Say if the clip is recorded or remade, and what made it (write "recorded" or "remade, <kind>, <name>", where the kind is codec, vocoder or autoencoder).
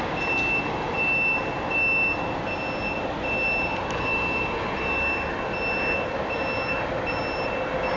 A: recorded